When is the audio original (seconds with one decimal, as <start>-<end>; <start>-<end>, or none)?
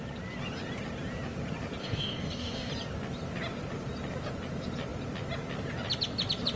0.0-1.8; 2.7-6.6